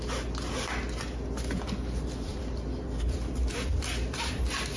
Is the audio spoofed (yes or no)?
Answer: no